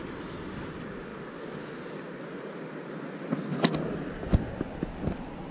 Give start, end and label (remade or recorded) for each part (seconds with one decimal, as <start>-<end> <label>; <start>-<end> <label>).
0.0-5.5 recorded